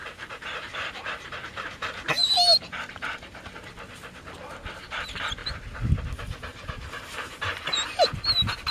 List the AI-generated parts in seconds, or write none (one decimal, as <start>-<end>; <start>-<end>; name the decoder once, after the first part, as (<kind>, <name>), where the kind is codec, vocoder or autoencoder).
0.0-2.1 (vocoder, BigVGAN v2); 6.5-7.7